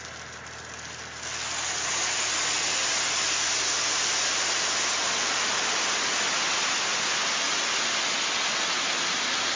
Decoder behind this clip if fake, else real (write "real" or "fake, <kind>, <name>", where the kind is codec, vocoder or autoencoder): real